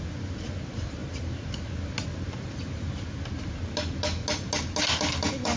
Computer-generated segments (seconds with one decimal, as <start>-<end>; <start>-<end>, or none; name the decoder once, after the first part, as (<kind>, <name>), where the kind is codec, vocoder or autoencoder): none